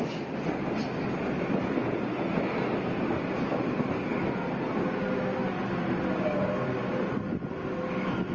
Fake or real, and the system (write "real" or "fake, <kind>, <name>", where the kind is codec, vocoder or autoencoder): real